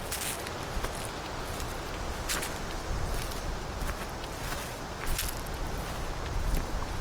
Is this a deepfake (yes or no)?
no